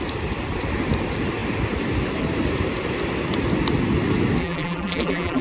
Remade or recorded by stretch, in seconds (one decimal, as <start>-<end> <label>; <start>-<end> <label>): 0.0-4.4 recorded; 4.4-5.4 remade